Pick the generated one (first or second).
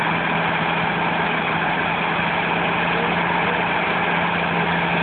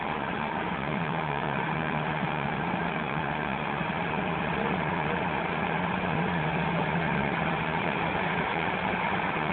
second